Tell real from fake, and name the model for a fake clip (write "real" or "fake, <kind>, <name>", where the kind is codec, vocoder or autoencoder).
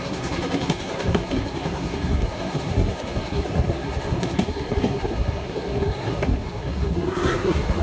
fake, codec, SNAC